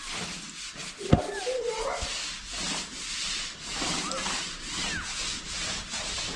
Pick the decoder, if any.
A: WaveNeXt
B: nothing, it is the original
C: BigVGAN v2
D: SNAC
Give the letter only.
B